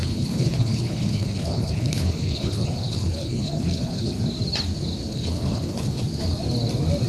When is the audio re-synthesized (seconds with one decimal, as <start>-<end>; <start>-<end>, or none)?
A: 0.0-4.2; 5.1-6.0